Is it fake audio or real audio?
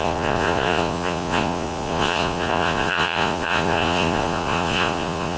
fake